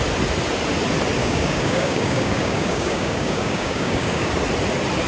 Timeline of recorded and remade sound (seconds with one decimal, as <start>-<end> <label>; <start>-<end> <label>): 0.0-1.2 recorded; 1.2-4.3 remade; 4.3-5.1 recorded